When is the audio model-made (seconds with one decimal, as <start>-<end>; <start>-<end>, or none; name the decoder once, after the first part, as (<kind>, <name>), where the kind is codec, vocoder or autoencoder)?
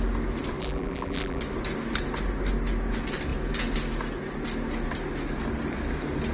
0.6-1.4 (vocoder, BigVGAN v2)